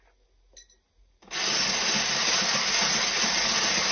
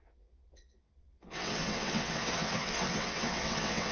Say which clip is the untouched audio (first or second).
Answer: first